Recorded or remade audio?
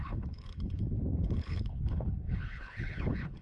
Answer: remade